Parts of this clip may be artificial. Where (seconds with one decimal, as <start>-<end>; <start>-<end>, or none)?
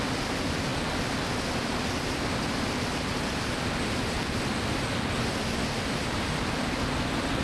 none